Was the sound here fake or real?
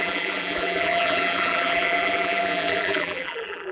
fake